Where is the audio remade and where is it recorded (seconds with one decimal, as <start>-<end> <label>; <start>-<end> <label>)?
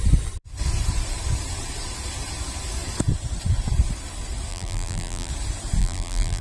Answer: 0.0-4.5 recorded; 4.5-5.3 remade; 5.3-5.8 recorded; 5.8-6.4 remade